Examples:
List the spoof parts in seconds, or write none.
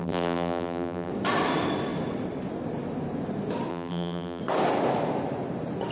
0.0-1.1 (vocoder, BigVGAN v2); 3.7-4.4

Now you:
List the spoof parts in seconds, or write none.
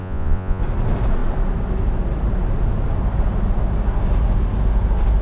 0.0-0.6 (vocoder, Vocos)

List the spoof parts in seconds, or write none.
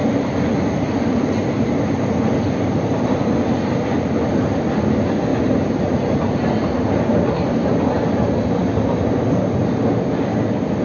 0.0-4.7 (vocoder, BigVGAN v2); 5.3-6.9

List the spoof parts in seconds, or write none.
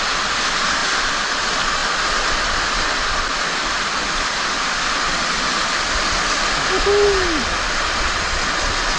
0.8-1.4 (vocoder, BigVGAN v2); 1.8-6.3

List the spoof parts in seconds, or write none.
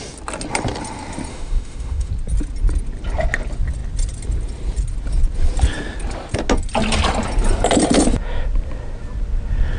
1.3-2.1 (autoencoder, DAC-VAE)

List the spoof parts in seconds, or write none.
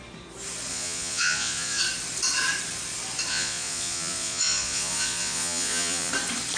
0.7-1.8 (vocoder, Vocos); 3.3-6.1